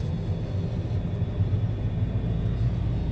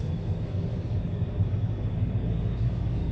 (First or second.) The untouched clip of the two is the first